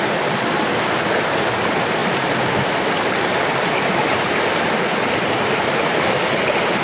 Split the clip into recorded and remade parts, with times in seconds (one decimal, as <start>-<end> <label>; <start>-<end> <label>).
0.0-6.8 recorded